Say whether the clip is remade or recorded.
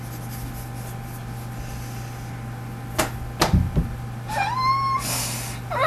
recorded